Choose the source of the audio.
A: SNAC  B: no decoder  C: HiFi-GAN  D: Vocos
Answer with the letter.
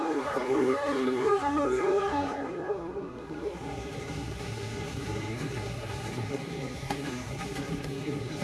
A